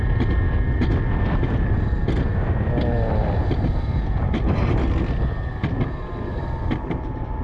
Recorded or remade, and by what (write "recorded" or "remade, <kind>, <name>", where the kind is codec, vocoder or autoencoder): recorded